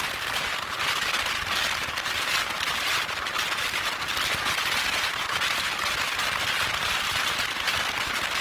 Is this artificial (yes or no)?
no